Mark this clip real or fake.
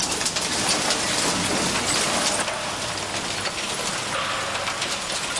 real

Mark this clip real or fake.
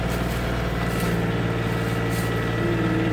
real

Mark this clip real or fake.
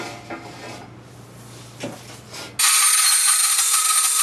real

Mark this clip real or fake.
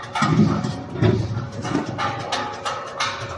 real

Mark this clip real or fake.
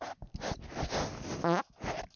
real